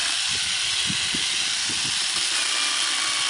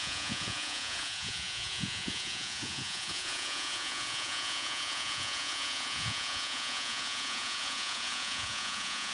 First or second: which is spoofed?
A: second